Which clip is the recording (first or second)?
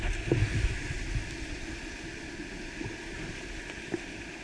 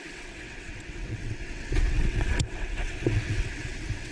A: first